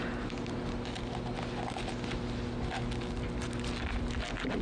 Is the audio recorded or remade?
recorded